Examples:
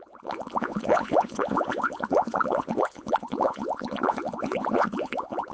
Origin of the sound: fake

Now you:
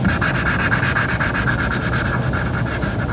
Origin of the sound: real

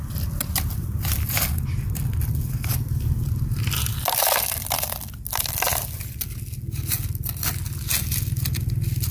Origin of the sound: real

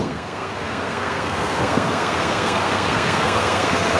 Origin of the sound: fake